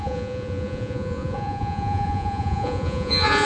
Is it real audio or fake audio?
fake